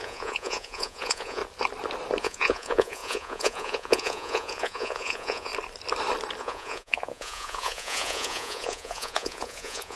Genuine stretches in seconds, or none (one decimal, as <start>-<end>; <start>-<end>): 1.4-2.2; 5.5-6.4